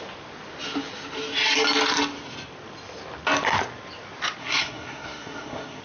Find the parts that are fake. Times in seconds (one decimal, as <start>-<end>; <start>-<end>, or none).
4.4-5.8